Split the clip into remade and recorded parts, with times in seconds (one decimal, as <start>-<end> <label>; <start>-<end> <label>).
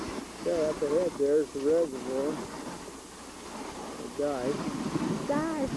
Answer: 0.0-5.8 recorded